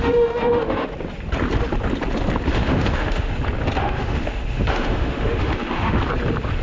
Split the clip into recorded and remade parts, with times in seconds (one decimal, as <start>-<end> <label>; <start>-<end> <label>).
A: 0.0-0.9 remade; 0.9-2.5 recorded; 2.5-3.3 remade; 3.3-3.8 recorded; 3.8-6.0 remade; 6.0-6.6 recorded